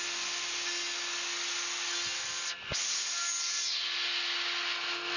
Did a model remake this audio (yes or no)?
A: no